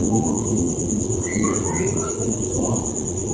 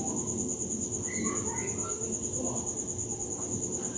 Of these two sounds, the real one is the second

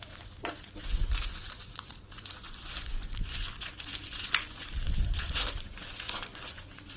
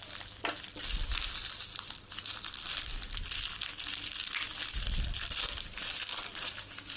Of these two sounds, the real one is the second